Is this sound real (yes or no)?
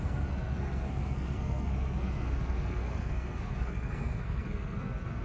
no